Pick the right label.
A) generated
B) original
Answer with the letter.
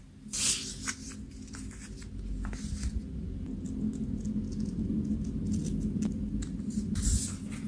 B